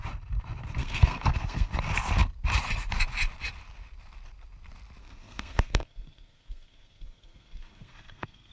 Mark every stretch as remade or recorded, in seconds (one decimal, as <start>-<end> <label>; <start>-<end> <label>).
0.0-0.8 recorded; 0.8-1.7 remade; 1.7-5.0 recorded; 5.0-8.5 remade

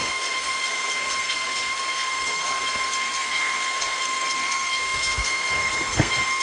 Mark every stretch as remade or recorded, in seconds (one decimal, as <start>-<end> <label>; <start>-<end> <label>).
0.0-6.4 remade

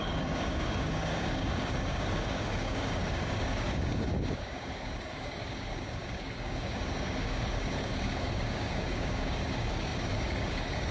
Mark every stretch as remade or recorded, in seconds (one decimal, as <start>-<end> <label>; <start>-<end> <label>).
0.0-10.9 remade

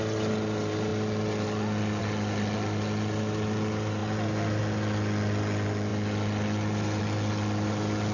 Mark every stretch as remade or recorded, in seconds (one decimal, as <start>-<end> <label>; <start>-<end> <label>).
0.0-8.1 recorded

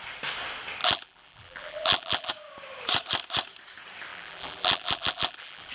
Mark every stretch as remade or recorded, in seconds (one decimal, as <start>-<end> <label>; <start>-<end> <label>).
0.0-0.8 recorded; 0.8-2.3 remade; 2.3-4.1 recorded; 4.1-5.7 remade

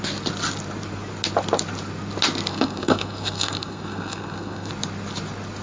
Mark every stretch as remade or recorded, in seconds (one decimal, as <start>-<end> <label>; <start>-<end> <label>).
0.0-2.5 recorded; 2.5-4.7 remade; 4.7-5.6 recorded

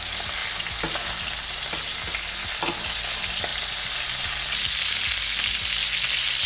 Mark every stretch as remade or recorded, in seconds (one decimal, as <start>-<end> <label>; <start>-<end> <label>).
0.0-6.5 recorded

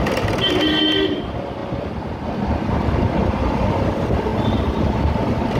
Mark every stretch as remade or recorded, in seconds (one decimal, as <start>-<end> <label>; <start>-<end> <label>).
0.0-5.6 recorded